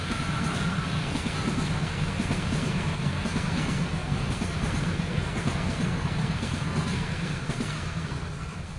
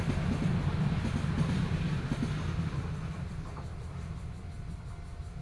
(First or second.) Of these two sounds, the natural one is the second